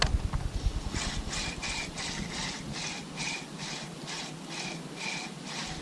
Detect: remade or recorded recorded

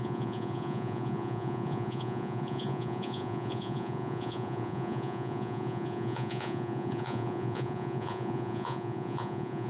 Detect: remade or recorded remade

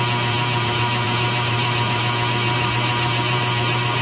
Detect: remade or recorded remade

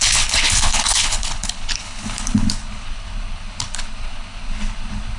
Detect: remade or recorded remade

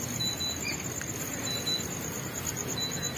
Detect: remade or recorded recorded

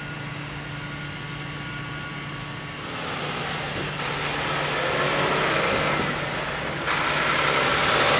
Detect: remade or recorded recorded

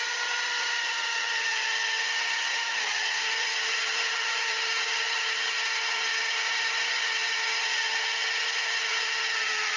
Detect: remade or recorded remade